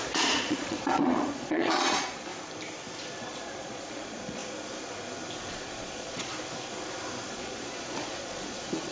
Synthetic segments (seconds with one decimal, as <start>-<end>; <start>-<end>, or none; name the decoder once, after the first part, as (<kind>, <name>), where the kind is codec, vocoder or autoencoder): 0.0-2.3 (vocoder, Vocos); 3.2-4.4; 5.5-6.3; 7.3-8.9